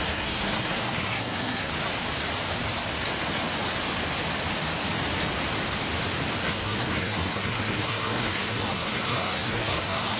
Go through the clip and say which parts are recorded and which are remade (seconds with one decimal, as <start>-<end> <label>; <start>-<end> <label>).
0.0-1.7 remade; 1.7-6.4 recorded; 6.4-10.2 remade